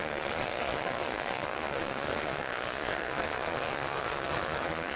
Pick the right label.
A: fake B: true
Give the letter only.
A